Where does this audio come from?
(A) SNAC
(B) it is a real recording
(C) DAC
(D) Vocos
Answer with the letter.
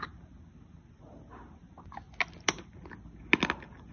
B